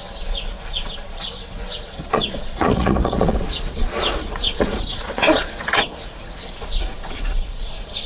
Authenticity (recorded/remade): remade